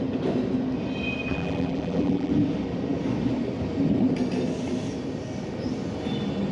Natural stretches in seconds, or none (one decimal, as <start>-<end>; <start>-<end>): 0.0-1.3; 2.3-6.5